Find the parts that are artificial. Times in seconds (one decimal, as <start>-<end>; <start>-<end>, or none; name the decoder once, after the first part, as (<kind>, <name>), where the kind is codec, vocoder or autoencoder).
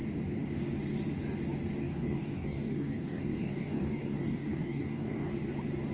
1.8-5.3 (codec, DAC)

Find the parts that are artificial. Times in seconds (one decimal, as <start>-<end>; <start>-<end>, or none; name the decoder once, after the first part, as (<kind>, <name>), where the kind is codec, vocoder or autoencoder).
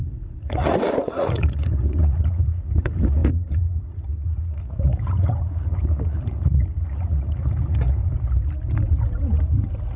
0.0-8.0 (vocoder, Vocos)